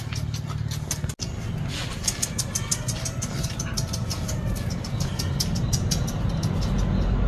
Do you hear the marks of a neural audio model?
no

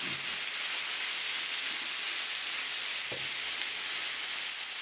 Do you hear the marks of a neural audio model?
no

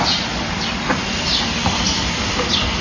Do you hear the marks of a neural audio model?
no